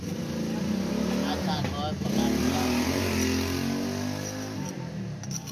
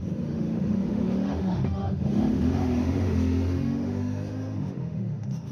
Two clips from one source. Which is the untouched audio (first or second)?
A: first